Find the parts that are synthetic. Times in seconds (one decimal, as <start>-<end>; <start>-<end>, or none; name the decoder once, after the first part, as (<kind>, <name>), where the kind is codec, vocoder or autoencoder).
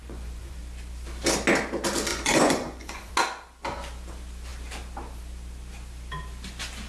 0.0-0.6 (vocoder, Vocos); 2.1-3.1